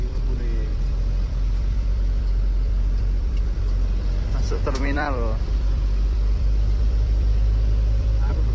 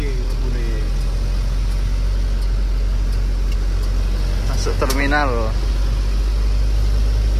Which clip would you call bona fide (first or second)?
second